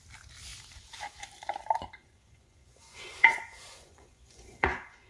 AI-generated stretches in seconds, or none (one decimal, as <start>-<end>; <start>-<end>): 2.0-5.1